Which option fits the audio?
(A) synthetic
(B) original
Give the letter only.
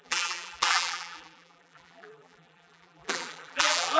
A